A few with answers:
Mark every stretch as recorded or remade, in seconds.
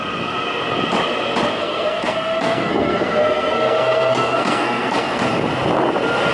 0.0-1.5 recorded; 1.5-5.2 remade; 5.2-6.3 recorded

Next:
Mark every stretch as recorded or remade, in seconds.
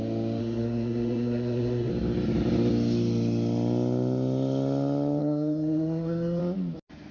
0.0-0.4 recorded; 0.4-1.9 remade; 1.9-5.2 recorded; 5.2-6.4 remade; 6.4-7.1 recorded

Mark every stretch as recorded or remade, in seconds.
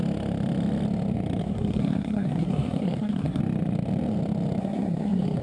0.0-1.4 recorded; 1.4-3.4 remade; 3.4-4.6 recorded; 4.6-5.4 remade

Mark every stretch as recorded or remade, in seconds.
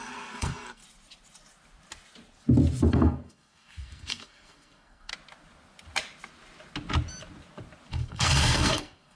0.0-0.8 remade; 0.8-2.9 recorded; 2.9-5.1 remade; 5.1-7.9 recorded; 7.9-9.2 remade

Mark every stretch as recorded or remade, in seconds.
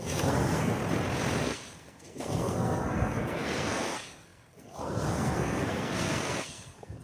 0.0-0.8 remade; 0.8-1.4 recorded; 1.4-7.0 remade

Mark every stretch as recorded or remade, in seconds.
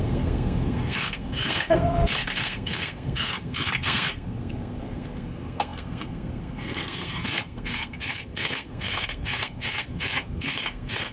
0.0-11.1 remade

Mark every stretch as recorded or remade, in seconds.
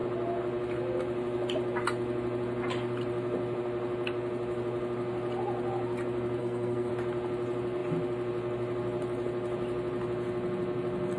0.0-6.4 recorded; 6.4-6.9 remade; 6.9-11.2 recorded